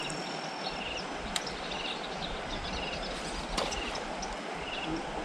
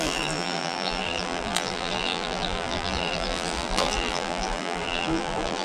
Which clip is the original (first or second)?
first